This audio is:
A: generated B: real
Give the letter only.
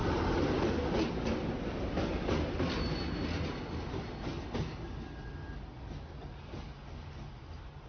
B